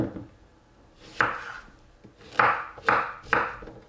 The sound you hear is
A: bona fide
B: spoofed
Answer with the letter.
A